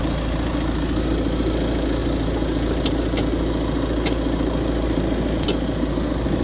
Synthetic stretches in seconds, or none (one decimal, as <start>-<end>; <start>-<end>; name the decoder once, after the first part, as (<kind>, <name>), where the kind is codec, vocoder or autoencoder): none